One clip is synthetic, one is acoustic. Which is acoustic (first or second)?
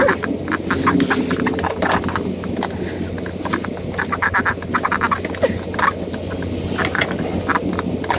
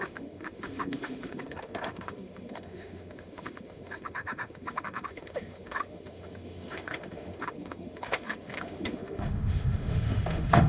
first